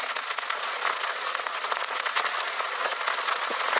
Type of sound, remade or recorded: remade